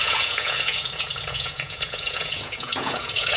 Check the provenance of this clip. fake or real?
fake